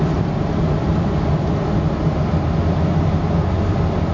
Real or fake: real